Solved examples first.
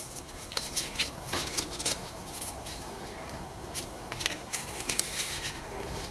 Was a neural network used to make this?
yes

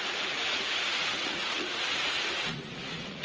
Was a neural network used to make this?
yes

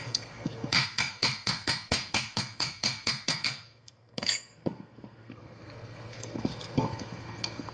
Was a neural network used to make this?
yes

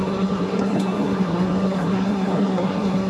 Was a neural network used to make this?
yes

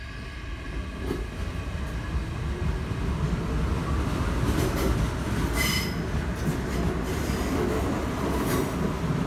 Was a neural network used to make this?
no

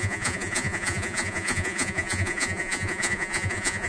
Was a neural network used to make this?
yes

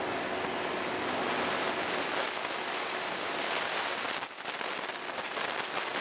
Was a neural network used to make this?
no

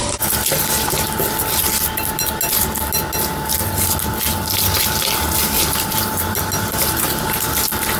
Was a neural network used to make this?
no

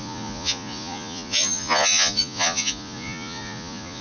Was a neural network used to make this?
yes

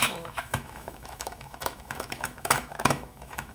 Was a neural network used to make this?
yes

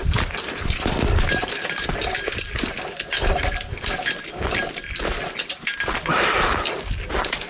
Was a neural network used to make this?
no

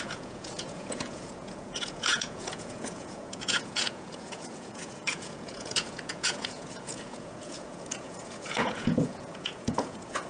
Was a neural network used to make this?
yes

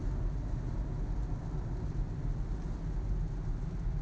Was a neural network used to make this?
no